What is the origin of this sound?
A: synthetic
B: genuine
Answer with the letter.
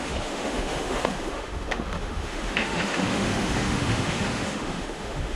A